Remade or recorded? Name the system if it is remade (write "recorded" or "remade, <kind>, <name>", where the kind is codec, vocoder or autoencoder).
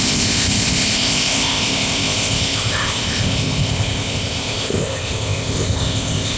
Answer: remade, codec, ZipCodec